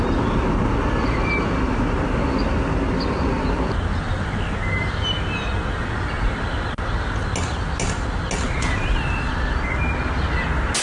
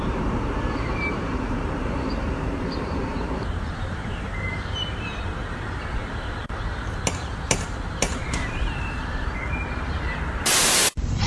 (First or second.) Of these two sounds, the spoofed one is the second